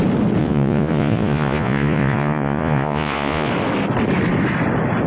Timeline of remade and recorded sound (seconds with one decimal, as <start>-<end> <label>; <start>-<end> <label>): 0.0-0.4 recorded; 0.4-3.5 remade; 3.5-5.1 recorded